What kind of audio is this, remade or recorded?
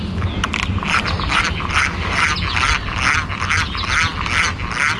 recorded